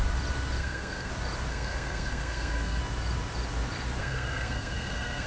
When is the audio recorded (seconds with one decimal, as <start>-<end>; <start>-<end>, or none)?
0.0-0.6; 1.1-1.5; 2.8-4.0